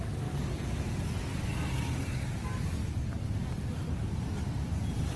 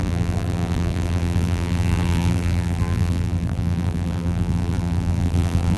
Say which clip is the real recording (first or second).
first